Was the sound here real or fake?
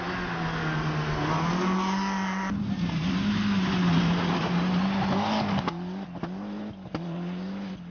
real